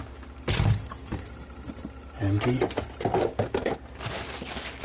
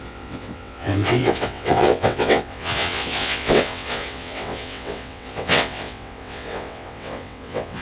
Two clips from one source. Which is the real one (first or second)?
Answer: first